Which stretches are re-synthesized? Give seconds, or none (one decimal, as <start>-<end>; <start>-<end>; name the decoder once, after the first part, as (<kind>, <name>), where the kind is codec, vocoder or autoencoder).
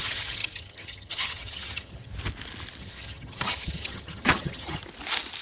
0.0-2.1 (vocoder, HiFi-GAN); 2.8-4.8